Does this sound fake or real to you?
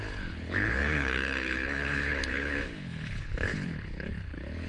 fake